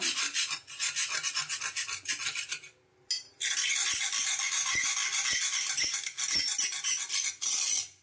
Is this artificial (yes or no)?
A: no